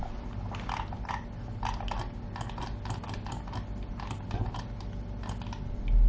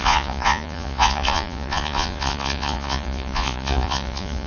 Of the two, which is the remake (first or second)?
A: second